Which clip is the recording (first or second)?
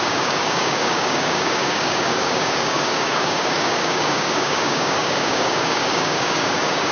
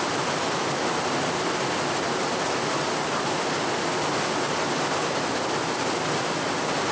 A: second